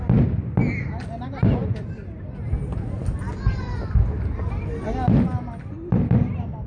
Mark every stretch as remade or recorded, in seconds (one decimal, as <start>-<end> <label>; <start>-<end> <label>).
0.0-6.7 recorded